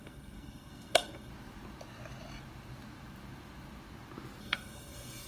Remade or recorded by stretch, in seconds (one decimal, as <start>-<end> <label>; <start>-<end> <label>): 0.0-1.3 remade; 1.3-4.4 recorded; 4.4-5.3 remade